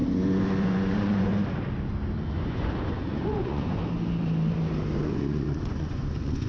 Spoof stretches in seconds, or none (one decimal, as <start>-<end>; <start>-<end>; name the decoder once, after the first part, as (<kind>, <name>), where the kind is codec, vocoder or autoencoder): 0.6-1.3 (vocoder, Vocos); 2.3-3.8; 5.0-6.5